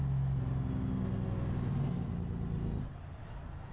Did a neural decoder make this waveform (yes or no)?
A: no